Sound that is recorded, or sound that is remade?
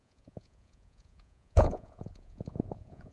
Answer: remade